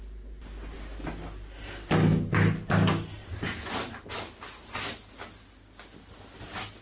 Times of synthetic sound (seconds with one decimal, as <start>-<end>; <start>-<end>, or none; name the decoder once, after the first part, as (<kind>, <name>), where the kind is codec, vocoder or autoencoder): none